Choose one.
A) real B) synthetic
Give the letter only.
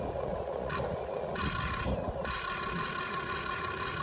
B